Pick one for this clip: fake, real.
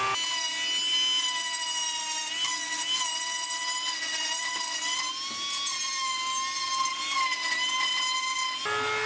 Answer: real